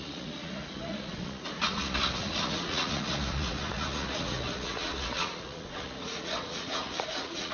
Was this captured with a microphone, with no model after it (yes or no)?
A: no